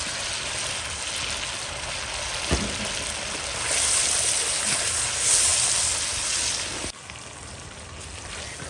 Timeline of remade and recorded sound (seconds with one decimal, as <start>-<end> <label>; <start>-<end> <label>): 0.0-8.7 recorded